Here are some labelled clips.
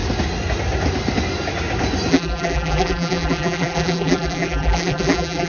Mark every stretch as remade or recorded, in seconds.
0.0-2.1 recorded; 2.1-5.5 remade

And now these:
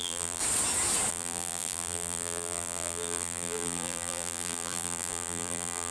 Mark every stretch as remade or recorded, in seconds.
0.0-0.4 remade; 0.4-1.1 recorded; 1.1-5.9 remade

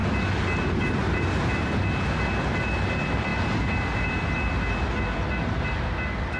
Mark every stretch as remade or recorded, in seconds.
0.0-1.0 recorded; 1.0-1.7 remade; 1.7-3.3 recorded; 3.3-4.2 remade; 4.2-6.4 recorded

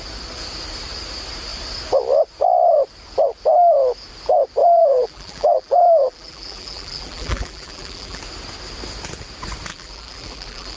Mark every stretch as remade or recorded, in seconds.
0.0-4.6 recorded; 4.6-8.2 remade; 8.2-9.7 recorded; 9.7-10.8 remade

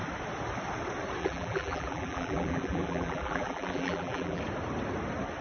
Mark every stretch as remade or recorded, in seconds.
0.0-1.2 recorded; 1.2-4.4 remade; 4.4-5.4 recorded

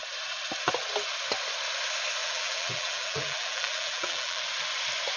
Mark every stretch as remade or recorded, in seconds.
0.0-2.2 recorded; 2.2-4.4 remade; 4.4-5.2 recorded